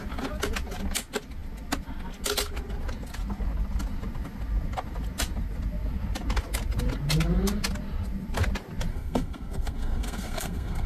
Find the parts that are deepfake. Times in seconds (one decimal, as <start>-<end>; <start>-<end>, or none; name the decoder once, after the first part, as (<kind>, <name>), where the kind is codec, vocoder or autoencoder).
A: 8.9-10.9 (codec, SNAC)